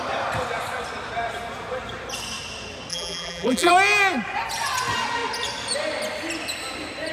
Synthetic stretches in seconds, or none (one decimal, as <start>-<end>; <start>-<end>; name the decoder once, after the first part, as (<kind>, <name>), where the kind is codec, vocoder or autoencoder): 2.9-3.7 (vocoder, BigVGAN v2)